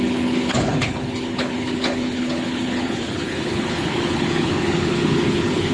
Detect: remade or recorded remade